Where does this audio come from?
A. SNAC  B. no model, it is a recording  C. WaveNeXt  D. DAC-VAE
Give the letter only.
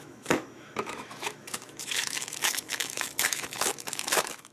D